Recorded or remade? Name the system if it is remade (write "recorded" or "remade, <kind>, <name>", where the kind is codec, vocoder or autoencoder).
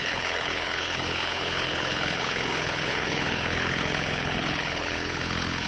remade, codec, HILCodec